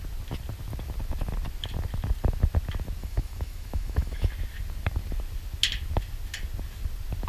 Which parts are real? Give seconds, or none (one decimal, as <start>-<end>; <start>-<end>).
0.0-3.0; 4.3-7.3